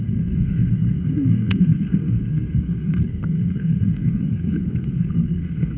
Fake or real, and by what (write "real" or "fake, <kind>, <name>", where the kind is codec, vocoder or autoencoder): fake, codec, SNAC